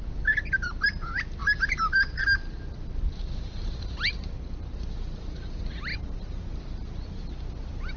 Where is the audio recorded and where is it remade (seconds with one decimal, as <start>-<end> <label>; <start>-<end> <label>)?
0.0-5.9 recorded; 5.9-6.6 remade; 6.6-8.0 recorded